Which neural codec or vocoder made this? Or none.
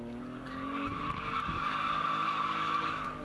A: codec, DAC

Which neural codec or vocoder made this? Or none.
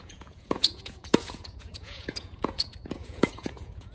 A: vocoder, Vocos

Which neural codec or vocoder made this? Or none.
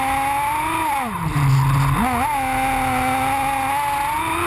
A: none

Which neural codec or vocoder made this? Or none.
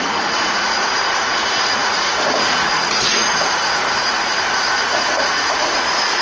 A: vocoder, Vocos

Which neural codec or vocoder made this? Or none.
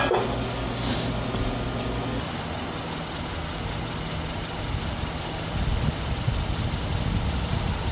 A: none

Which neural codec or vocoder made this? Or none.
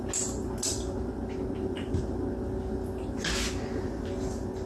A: none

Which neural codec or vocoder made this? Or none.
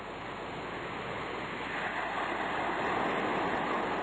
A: none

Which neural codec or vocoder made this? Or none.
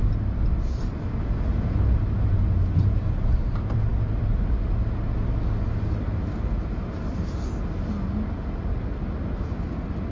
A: none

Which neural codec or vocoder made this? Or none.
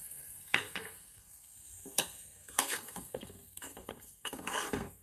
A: codec, SNAC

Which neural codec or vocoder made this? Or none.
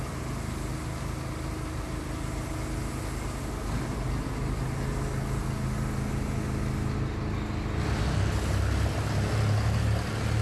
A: none